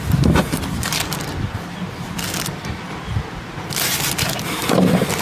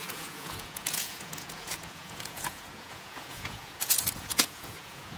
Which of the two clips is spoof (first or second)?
second